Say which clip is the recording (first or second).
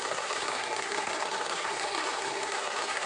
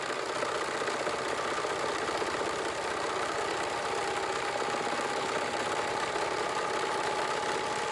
second